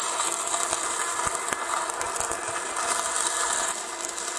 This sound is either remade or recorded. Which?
recorded